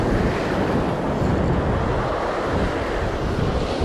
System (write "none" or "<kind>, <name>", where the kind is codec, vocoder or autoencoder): none